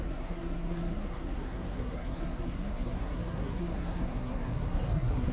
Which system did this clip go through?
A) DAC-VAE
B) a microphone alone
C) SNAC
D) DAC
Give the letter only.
C